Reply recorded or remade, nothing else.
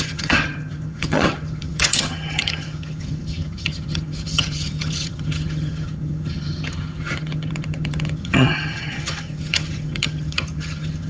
remade